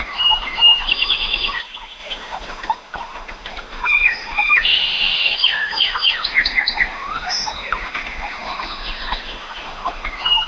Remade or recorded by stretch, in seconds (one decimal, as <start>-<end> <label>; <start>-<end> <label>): 0.0-10.5 remade